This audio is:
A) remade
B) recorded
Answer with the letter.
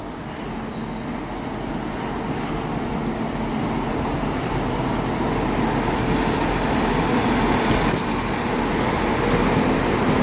B